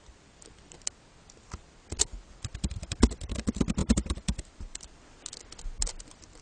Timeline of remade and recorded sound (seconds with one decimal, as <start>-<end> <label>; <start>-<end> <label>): 0.0-2.5 recorded; 2.5-3.0 remade; 3.0-3.8 recorded; 3.8-5.2 remade; 5.2-6.4 recorded